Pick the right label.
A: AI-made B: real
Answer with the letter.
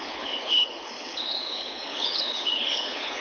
A